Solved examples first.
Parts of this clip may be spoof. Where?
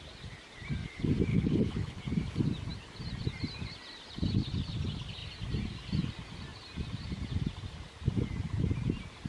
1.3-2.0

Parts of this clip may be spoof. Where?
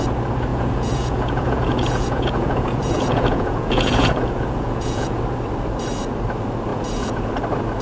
0.5-5.2; 6.7-7.3